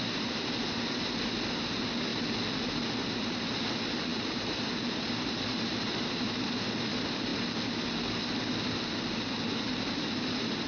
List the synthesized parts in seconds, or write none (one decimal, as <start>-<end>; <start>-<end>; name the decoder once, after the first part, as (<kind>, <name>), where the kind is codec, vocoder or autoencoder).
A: 0.0-0.5 (vocoder, BigVGAN v2); 4.1-6.7